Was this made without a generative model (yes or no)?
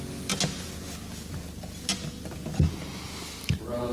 yes